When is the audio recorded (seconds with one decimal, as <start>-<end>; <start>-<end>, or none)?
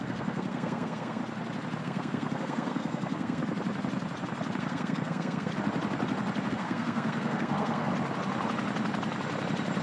1.2-1.8; 3.4-4.6; 5.5-6.5; 7.9-9.8